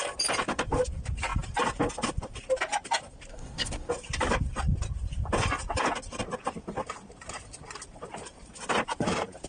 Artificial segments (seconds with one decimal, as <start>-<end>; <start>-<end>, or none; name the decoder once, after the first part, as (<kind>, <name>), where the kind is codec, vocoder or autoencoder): 3.3-3.9 (codec, SNAC)